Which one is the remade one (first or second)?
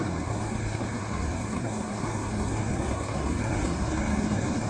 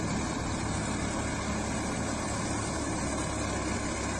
first